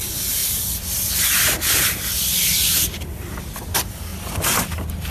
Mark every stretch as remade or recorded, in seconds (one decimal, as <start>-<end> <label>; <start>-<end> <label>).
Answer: 0.0-0.4 recorded; 0.4-3.5 remade; 3.5-5.1 recorded

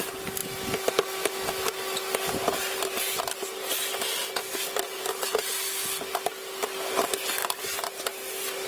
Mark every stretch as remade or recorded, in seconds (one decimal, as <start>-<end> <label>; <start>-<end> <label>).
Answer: 0.0-7.4 recorded; 7.4-8.0 remade; 8.0-8.7 recorded

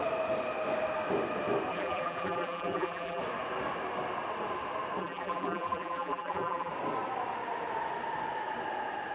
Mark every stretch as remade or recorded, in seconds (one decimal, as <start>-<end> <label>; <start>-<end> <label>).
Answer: 0.0-1.7 recorded; 1.7-3.2 remade; 3.2-5.0 recorded; 5.0-6.7 remade; 6.7-9.1 recorded

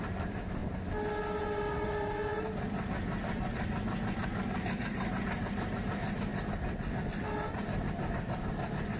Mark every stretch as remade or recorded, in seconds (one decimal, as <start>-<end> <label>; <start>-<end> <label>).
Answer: 0.0-0.6 remade; 0.6-1.4 recorded; 1.4-2.3 remade; 2.3-3.5 recorded; 3.5-6.3 remade; 6.3-9.0 recorded

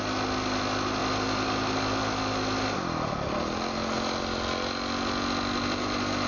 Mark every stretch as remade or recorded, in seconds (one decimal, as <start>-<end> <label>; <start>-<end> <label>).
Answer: 0.0-6.3 recorded

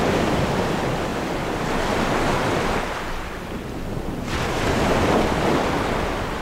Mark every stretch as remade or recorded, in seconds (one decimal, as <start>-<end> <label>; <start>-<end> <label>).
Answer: 0.0-1.1 remade; 1.1-4.9 recorded; 4.9-6.4 remade